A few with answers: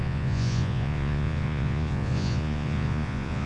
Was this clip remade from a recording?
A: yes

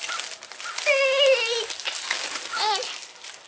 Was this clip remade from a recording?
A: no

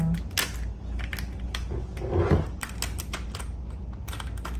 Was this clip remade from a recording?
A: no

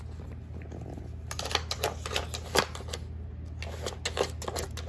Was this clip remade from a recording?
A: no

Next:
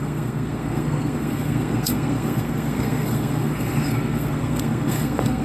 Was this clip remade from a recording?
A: yes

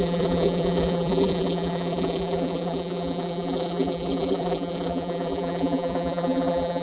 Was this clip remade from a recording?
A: yes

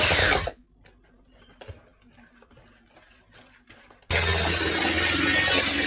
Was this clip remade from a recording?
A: no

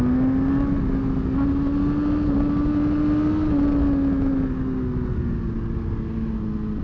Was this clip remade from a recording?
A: no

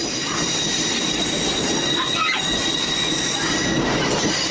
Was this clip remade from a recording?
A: no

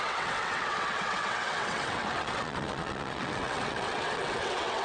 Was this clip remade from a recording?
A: yes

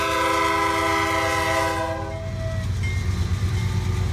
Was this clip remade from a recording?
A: no